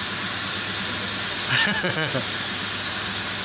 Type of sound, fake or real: real